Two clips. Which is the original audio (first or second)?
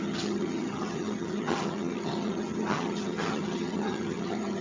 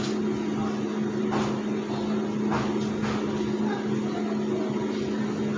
second